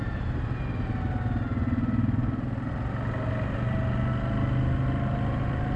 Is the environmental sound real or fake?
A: real